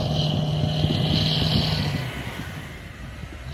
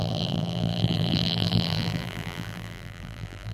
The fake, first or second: second